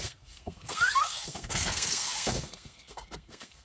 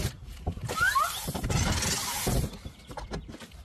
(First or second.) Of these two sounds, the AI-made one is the first